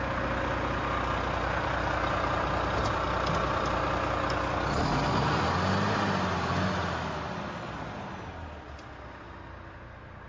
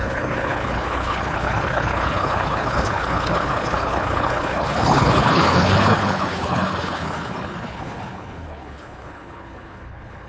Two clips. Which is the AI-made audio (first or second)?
second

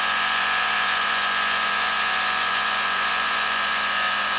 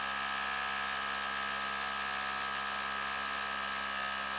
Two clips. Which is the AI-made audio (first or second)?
first